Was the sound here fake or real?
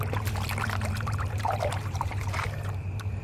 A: fake